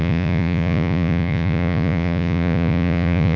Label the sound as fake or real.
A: fake